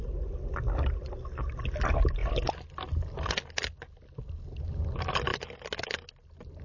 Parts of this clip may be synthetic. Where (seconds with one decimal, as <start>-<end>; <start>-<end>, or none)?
none